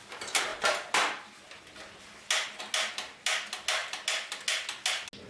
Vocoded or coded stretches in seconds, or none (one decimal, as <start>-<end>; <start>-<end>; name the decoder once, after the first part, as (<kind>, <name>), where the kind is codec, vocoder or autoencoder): none